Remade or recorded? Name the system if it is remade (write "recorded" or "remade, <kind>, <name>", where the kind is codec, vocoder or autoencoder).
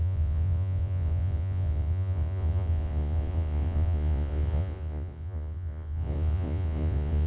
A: remade, vocoder, Vocos